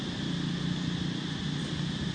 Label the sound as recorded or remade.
recorded